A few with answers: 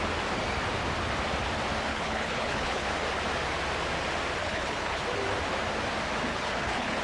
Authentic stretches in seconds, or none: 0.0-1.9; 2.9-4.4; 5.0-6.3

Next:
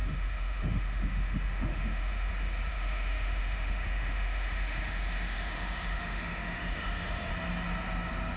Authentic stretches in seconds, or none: 2.3-2.7; 7.3-8.4

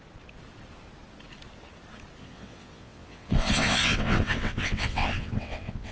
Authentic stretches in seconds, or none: 0.0-2.2

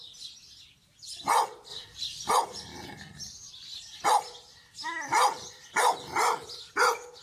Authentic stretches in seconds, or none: 0.0-1.7; 2.3-2.7; 3.5-7.2

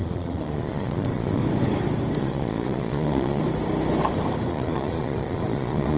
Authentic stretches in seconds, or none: 1.4-2.2; 3.4-4.5